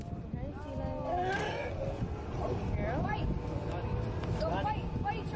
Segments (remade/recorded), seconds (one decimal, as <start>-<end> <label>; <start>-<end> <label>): 0.0-5.4 recorded